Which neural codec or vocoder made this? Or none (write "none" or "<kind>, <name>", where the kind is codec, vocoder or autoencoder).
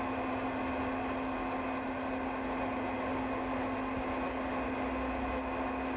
none